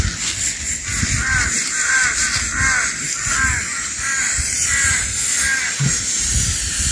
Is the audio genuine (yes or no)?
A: yes